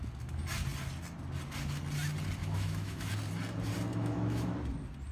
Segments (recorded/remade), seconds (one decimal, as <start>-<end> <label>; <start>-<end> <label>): 0.0-2.4 recorded; 2.4-3.1 remade; 3.1-3.9 recorded; 3.9-4.5 remade; 4.5-5.1 recorded